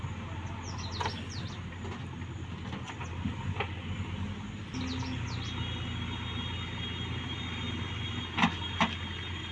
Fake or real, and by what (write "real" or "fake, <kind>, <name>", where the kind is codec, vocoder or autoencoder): real